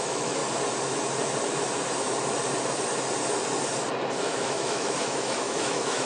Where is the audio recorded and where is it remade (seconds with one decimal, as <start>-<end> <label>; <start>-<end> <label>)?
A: 0.0-0.4 remade; 0.4-4.1 recorded; 4.1-6.1 remade